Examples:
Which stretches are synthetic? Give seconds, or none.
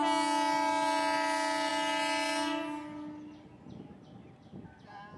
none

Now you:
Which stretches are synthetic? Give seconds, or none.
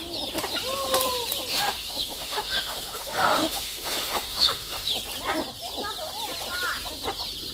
1.5-4.9 (autoencoder, DAC-VAE)